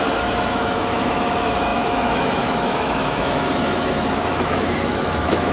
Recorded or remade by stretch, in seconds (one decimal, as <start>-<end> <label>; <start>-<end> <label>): 0.0-5.5 remade